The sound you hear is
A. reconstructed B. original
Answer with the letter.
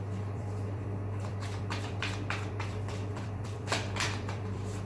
A